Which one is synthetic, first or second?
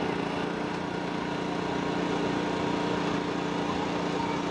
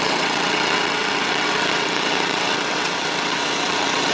second